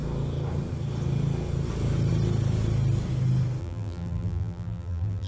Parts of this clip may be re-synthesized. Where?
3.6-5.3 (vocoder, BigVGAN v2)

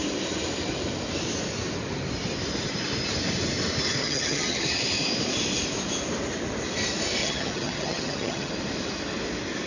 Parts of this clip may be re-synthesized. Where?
4.0-4.6 (vocoder, HiFi-GAN); 7.2-8.5

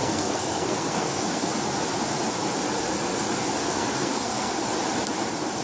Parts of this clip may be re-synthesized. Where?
0.0-1.5 (codec, SNAC); 3.7-4.6

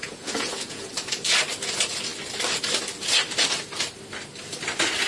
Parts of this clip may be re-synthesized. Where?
0.0-0.9 (vocoder, Vocos)